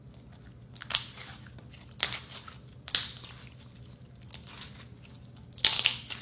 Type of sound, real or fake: real